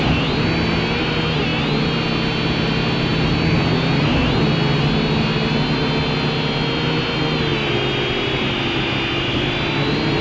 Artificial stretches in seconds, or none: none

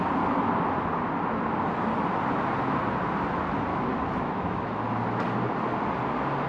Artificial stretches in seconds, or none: 3.7-4.7 (autoencoder, DAC-VAE)